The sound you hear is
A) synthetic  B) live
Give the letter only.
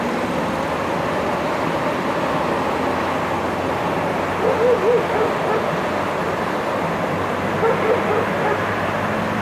B